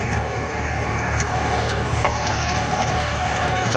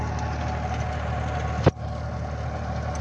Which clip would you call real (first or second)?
second